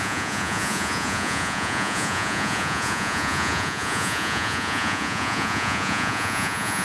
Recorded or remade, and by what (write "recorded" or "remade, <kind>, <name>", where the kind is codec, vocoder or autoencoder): remade, vocoder, Vocos